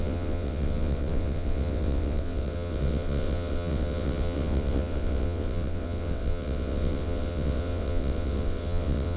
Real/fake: fake